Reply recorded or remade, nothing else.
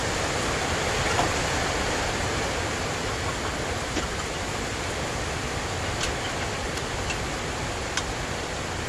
recorded